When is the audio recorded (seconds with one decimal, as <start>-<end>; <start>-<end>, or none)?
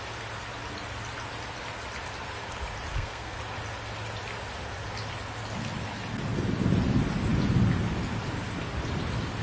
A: 0.0-2.9; 3.4-9.4